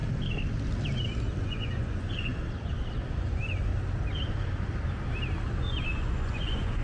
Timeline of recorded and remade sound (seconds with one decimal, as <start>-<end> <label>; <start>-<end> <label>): 0.0-1.4 recorded; 1.4-2.3 remade; 2.3-2.9 recorded; 2.9-3.7 remade; 3.7-5.6 recorded; 5.6-6.8 remade